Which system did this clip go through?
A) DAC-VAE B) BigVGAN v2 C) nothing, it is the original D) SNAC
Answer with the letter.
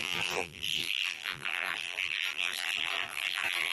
B